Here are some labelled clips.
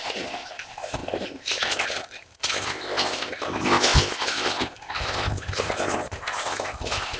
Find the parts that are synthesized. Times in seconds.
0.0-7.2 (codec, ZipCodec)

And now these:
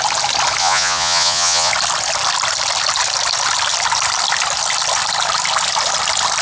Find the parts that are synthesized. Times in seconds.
0.6-1.7 (vocoder, Vocos)

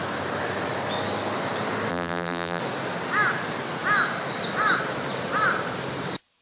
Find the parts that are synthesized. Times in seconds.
1.9-2.6 (vocoder, BigVGAN v2)